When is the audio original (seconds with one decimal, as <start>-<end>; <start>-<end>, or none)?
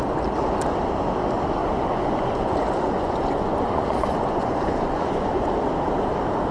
0.0-1.6; 5.5-6.5